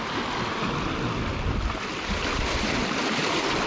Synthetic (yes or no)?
no